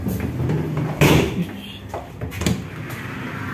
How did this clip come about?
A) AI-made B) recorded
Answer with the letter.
B